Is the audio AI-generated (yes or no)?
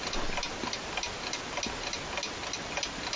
no